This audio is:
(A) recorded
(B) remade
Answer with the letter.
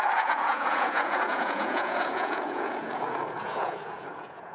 B